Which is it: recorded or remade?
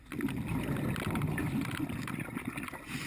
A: recorded